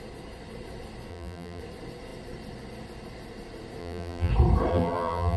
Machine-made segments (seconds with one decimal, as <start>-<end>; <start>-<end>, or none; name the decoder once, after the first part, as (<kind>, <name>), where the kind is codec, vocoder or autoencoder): 1.1-1.6 (vocoder, BigVGAN v2); 3.8-4.3; 4.7-5.4